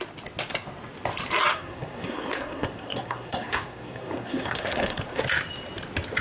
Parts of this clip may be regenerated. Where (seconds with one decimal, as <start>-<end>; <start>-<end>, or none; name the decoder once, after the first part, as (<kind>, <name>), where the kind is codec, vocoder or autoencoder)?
1.5-5.2 (codec, SNAC)